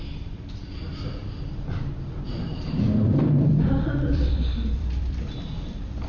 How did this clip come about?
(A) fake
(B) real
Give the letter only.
A